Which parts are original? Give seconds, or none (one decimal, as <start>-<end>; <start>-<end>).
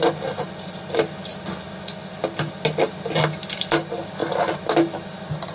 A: 0.0-5.5